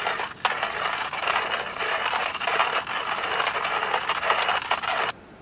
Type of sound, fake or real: real